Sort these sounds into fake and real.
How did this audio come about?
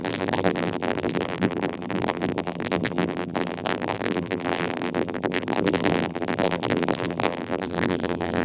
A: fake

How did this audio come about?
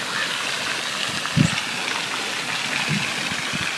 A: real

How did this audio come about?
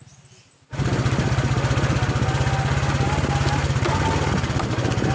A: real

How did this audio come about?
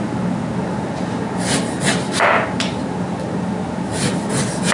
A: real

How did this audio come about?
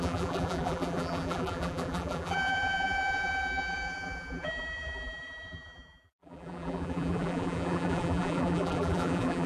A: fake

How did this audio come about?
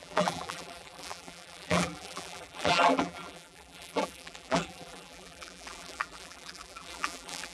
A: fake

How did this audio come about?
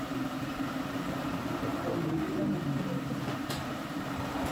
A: fake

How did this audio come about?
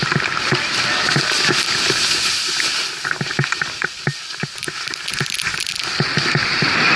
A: real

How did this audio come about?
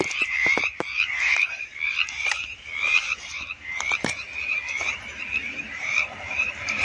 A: fake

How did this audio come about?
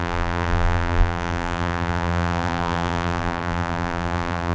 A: fake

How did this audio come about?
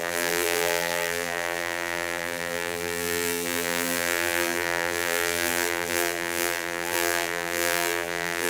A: fake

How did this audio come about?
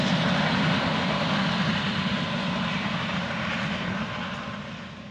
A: real